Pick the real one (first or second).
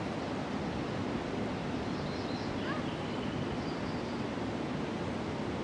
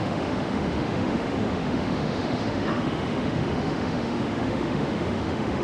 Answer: first